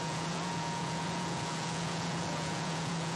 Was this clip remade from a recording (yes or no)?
yes